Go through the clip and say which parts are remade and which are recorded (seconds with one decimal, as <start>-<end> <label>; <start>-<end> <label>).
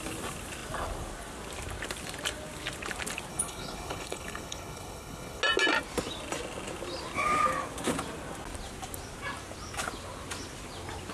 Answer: 0.0-3.3 recorded; 3.3-5.4 remade; 5.4-11.1 recorded